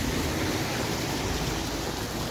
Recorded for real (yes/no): yes